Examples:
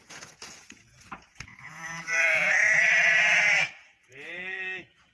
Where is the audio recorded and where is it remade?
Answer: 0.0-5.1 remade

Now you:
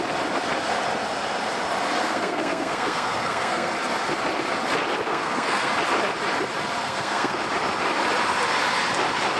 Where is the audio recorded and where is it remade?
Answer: 0.0-2.0 recorded; 2.0-3.7 remade; 3.7-5.1 recorded; 5.1-5.7 remade; 5.7-6.8 recorded; 6.8-7.4 remade; 7.4-9.4 recorded

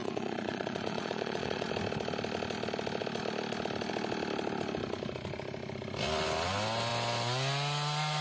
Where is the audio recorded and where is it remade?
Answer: 0.0-1.7 remade; 1.7-8.2 recorded